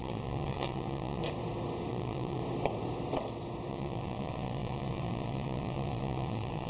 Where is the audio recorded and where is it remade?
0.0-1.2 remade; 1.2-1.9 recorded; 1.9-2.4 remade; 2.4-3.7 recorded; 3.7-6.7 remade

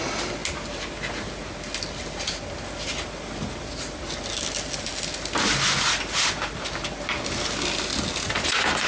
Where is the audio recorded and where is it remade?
0.0-8.9 recorded

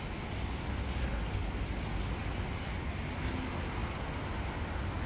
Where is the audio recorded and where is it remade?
0.0-5.1 recorded

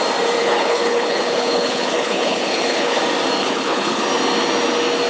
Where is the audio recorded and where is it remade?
0.0-0.4 recorded; 0.4-3.0 remade; 3.0-3.4 recorded; 3.4-4.0 remade; 4.0-5.1 recorded

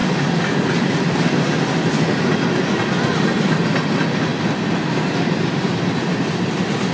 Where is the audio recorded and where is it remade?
0.0-6.9 recorded

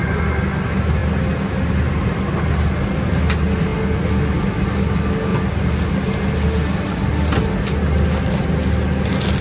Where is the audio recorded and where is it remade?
0.0-9.4 recorded

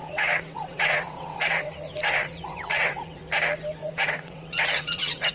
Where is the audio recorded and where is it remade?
0.0-3.2 remade; 3.2-3.8 recorded; 3.8-5.3 remade

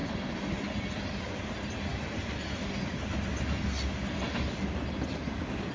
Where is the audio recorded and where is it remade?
0.0-5.7 recorded